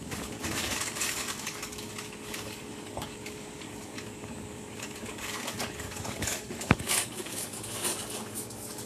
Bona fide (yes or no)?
no